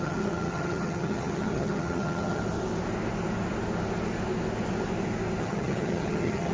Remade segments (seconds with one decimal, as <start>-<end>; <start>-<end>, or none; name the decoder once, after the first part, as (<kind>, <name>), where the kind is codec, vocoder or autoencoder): 0.0-2.4 (vocoder, HiFi-GAN); 5.4-6.5